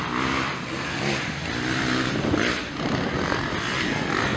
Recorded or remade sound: recorded